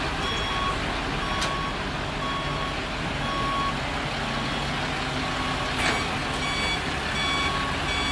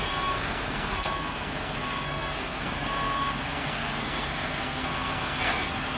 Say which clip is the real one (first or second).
first